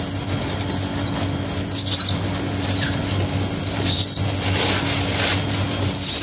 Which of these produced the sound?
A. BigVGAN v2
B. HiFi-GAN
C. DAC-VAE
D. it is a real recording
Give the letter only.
D